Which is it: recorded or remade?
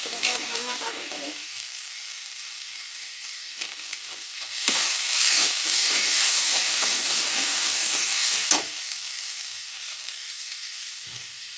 remade